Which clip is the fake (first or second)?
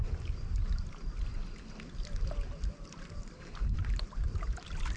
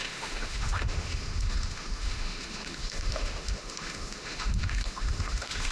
second